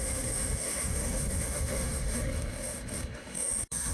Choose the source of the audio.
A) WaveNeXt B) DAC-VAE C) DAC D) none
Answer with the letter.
B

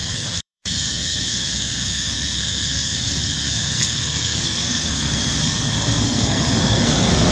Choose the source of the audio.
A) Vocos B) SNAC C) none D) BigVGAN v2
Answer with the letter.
B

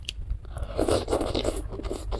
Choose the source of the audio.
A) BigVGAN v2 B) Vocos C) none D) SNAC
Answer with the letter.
A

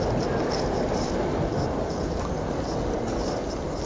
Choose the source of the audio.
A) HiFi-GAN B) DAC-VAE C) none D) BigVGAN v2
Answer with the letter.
C